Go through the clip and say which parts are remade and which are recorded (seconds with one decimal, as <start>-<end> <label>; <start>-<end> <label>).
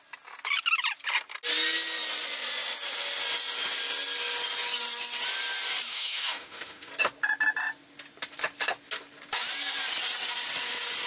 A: 0.0-5.9 recorded; 5.9-6.9 remade; 6.9-11.1 recorded